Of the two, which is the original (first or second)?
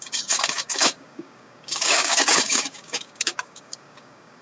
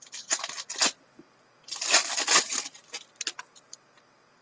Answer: second